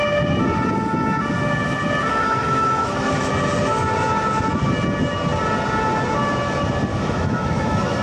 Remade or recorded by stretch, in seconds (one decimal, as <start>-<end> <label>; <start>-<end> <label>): 0.0-2.1 recorded; 2.1-3.3 remade; 3.3-6.9 recorded; 6.9-8.0 remade

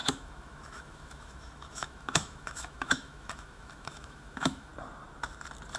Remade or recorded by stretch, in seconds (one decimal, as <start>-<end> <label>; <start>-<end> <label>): 0.0-4.7 remade; 4.7-5.8 recorded

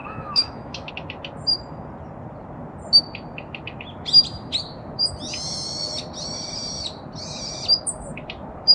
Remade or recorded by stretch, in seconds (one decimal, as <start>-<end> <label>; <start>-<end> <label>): 0.0-0.9 remade; 0.9-8.7 recorded

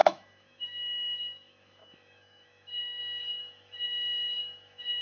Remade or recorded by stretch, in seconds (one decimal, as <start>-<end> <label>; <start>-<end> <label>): 0.0-3.0 remade; 3.0-3.4 recorded; 3.4-5.0 remade

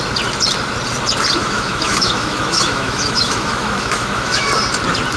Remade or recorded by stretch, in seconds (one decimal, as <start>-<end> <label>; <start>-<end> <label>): 0.0-1.4 recorded; 1.4-4.5 remade; 4.5-5.2 recorded